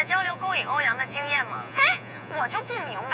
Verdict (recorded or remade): remade